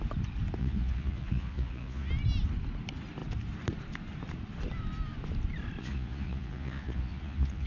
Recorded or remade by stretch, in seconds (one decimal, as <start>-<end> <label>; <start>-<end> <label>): 0.0-0.6 recorded; 0.6-2.1 remade; 2.1-5.8 recorded; 5.8-7.7 remade